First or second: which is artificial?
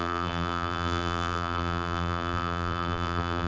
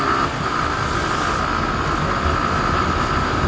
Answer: first